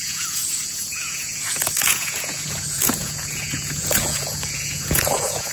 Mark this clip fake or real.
fake